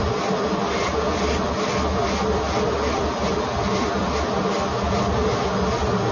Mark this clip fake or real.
real